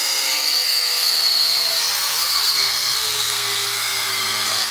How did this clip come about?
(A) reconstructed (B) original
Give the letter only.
A